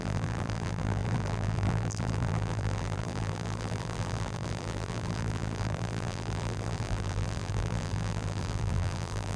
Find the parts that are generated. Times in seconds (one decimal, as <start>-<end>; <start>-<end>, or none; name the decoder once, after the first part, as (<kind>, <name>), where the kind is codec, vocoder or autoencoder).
0.0-9.4 (vocoder, BigVGAN v2)